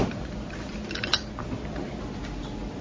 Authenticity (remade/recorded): recorded